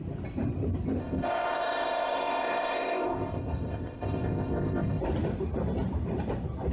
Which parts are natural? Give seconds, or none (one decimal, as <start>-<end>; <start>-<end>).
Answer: 0.0-1.0; 5.0-6.7